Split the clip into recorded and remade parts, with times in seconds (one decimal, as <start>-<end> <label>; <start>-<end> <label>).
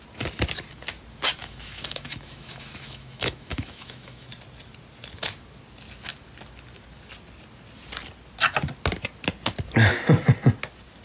0.0-1.4 recorded; 1.4-4.3 remade; 4.3-11.0 recorded